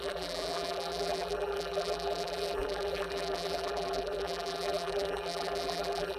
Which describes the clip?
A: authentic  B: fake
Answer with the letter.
B